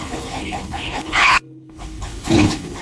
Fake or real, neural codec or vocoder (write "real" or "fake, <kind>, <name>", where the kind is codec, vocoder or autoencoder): fake, codec, HILCodec